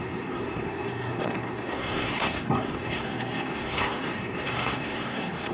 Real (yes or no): no